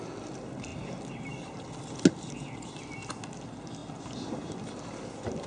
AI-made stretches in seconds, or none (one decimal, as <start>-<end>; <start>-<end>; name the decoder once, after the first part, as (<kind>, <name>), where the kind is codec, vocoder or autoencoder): none